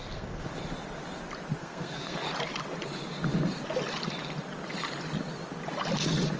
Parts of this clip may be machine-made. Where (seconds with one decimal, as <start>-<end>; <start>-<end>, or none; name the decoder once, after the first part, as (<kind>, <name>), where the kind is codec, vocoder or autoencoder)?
0.0-0.5 (codec, SNAC); 1.6-2.2